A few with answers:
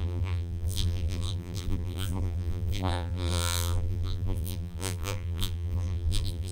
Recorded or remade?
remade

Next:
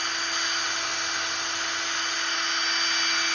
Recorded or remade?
recorded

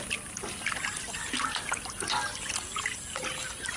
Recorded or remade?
recorded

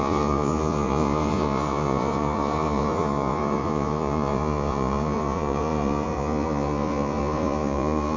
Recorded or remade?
remade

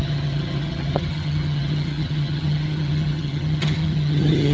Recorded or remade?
remade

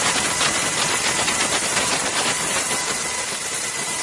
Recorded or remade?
recorded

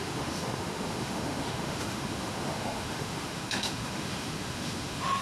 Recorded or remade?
remade